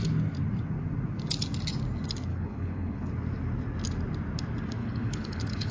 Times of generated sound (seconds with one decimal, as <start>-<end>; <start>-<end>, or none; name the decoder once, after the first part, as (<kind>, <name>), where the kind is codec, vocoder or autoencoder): 2.3-3.1 (codec, HILCodec); 4.8-5.7